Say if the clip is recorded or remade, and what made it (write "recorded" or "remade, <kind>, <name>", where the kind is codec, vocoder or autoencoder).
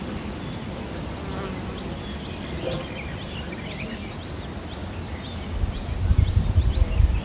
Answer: recorded